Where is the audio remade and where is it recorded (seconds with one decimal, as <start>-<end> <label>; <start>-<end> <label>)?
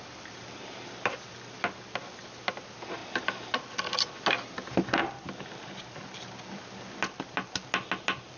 0.0-8.4 recorded